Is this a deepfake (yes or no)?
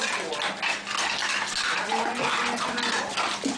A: no